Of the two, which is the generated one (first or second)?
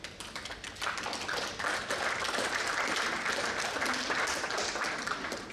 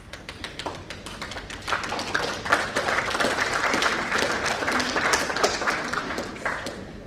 first